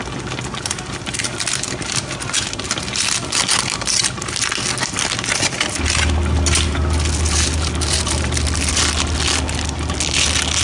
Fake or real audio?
real